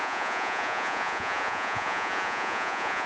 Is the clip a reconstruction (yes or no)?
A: yes